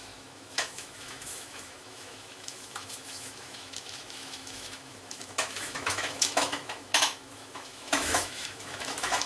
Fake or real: fake